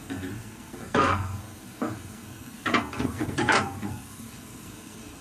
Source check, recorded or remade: remade